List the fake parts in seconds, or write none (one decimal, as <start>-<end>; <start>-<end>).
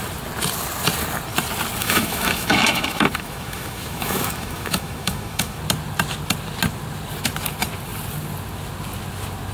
1.8-5.6